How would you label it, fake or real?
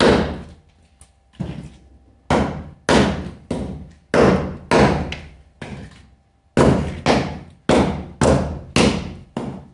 real